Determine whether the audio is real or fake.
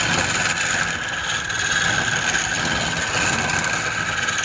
real